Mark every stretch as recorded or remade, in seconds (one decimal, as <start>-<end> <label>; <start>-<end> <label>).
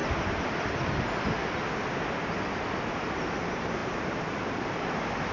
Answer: 0.0-3.8 recorded; 3.8-4.6 remade; 4.6-5.3 recorded